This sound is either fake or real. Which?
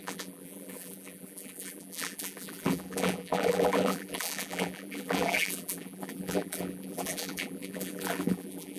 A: fake